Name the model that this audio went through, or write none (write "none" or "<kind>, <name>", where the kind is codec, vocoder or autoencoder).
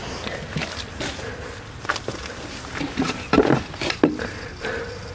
none